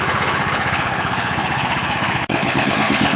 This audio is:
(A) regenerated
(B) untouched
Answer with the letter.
A